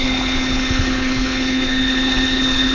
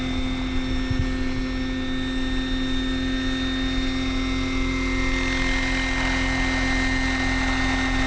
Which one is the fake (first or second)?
first